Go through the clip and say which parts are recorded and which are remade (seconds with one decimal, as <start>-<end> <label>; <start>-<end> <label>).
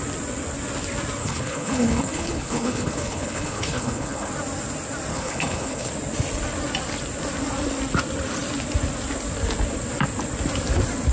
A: 0.0-1.2 recorded; 1.2-4.3 remade; 4.3-5.1 recorded; 5.1-5.9 remade; 5.9-11.1 recorded